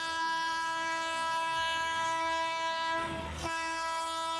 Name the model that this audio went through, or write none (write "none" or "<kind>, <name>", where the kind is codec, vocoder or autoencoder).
codec, SNAC